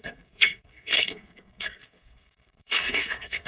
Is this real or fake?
fake